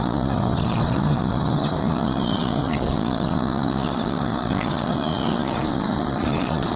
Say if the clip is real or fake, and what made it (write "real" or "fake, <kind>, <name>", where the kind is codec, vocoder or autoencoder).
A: fake, vocoder, Vocos